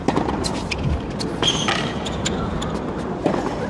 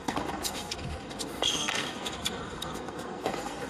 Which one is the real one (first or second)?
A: first